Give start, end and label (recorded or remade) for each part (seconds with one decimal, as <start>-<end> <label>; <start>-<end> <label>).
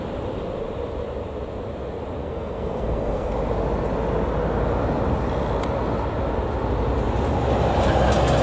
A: 0.0-2.2 recorded; 2.2-3.3 remade; 3.3-8.4 recorded